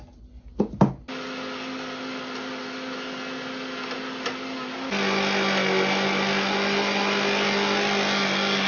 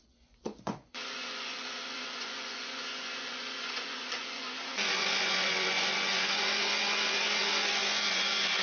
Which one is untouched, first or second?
first